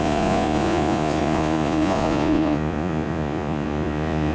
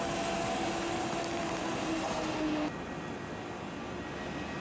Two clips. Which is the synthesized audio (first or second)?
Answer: first